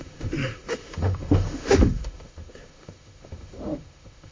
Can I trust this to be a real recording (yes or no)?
no